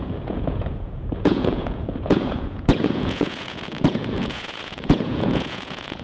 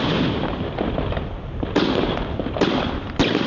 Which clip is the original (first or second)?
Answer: second